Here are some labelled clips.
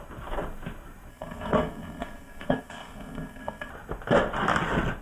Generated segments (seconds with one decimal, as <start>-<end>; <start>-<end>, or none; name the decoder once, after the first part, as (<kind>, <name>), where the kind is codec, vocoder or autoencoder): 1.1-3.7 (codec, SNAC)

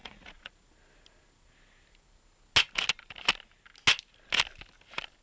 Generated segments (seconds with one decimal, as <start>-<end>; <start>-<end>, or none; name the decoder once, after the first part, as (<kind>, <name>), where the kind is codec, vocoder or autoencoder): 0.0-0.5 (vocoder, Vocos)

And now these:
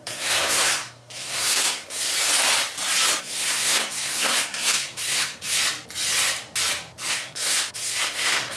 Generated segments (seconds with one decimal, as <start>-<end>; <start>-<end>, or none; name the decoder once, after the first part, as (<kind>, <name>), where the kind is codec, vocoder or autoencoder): 0.0-2.1 (codec, SNAC); 3.2-5.6; 7.1-8.6

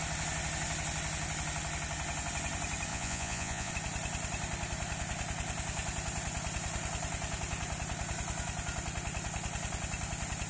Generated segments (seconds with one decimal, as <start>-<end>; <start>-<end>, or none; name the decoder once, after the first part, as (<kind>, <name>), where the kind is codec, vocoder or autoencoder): 2.9-3.7 (vocoder, Vocos)